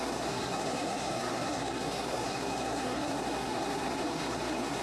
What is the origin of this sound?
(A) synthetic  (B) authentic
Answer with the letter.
A